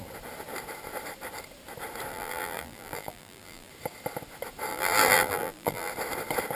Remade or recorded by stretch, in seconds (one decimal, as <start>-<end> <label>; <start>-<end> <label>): 0.0-2.1 recorded; 2.1-3.7 remade; 3.7-4.7 recorded; 4.7-5.9 remade; 5.9-6.6 recorded